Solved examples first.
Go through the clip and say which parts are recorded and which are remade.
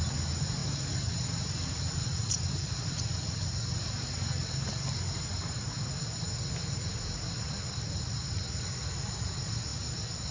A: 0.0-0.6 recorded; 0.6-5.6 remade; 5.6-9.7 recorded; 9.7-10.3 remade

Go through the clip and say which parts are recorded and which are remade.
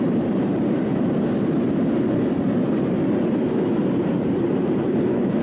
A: 0.0-0.9 remade; 0.9-4.1 recorded; 4.1-5.4 remade